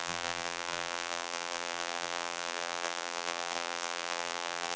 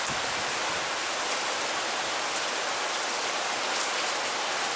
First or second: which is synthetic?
first